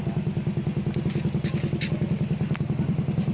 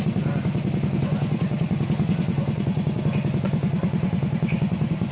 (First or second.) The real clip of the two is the first